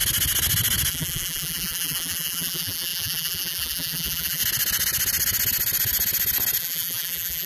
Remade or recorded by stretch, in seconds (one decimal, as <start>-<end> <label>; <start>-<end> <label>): 0.0-0.9 recorded; 0.9-4.4 remade; 4.4-6.6 recorded; 6.6-7.5 remade